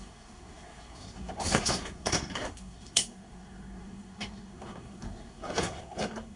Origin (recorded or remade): remade